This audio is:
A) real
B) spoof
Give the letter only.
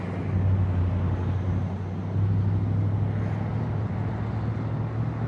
A